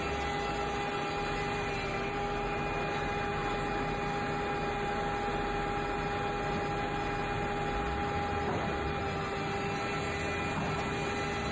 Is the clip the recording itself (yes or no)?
yes